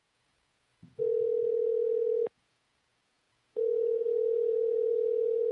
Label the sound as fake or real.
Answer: fake